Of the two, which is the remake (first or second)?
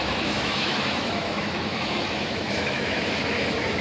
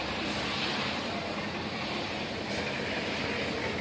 first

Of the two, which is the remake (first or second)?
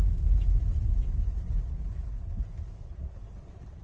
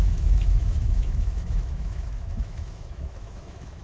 second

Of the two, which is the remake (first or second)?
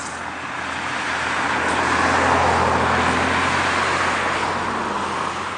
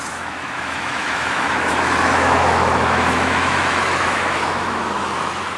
second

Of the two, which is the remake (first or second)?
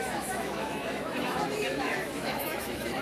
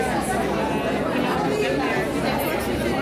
first